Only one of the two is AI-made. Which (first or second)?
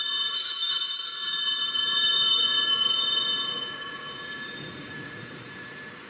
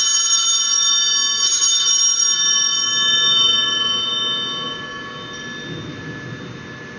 first